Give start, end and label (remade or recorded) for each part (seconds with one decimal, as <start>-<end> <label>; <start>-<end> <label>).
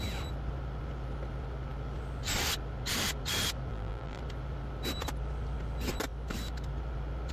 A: 0.0-3.7 recorded; 3.7-4.2 remade; 4.2-7.3 recorded